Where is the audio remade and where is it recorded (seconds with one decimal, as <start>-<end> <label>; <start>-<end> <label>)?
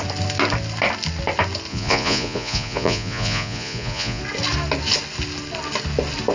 0.0-1.7 recorded; 1.7-4.2 remade; 4.2-6.3 recorded